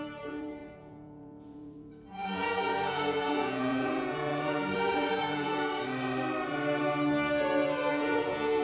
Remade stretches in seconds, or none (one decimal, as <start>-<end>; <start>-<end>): 0.0-5.5; 7.9-8.6